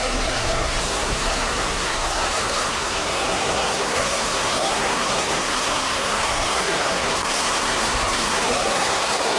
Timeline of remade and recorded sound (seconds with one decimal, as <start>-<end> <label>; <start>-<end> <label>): 0.0-9.4 remade